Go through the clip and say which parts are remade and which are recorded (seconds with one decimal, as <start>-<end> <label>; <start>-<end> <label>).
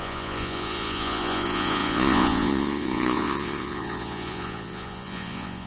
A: 0.0-5.7 remade